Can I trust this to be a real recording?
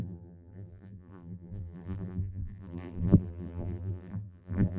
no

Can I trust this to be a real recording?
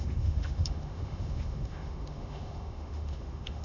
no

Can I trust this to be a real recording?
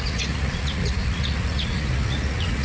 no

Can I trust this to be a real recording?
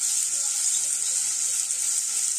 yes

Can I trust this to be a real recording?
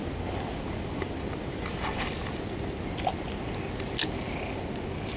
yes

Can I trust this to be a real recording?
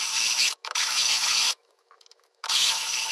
no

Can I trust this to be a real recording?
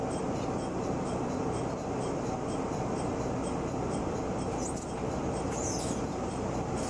yes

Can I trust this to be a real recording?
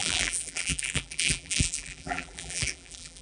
no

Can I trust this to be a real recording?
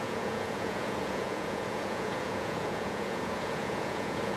no